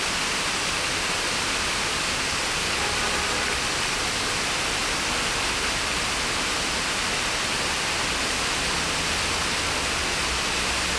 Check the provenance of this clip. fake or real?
real